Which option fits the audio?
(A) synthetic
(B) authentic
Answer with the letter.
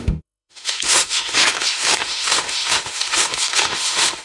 A